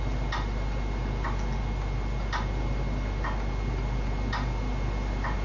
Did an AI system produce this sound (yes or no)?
no